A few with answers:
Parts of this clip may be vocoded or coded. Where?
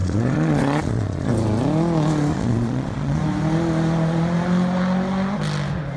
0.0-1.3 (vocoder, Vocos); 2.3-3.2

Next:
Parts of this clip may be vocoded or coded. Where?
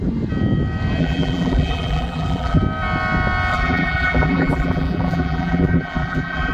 1.0-2.6 (vocoder, BigVGAN v2); 3.5-6.5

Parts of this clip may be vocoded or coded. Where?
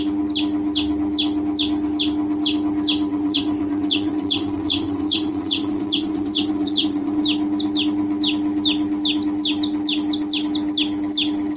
3.1-7.2 (vocoder, Vocos)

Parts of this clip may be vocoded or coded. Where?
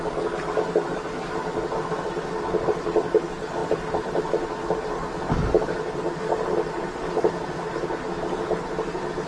none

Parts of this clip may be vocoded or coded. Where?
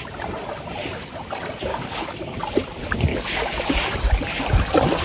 1.7-2.4 (codec, DAC); 3.1-3.7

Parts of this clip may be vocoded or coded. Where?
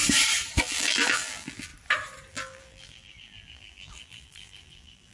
0.6-1.7 (vocoder, BigVGAN v2); 2.3-5.1